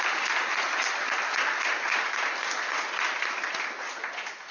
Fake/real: real